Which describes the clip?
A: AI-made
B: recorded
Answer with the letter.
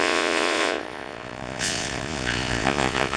A